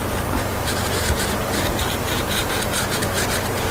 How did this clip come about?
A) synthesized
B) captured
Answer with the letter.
B